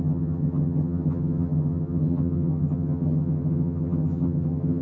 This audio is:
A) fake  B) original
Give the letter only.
A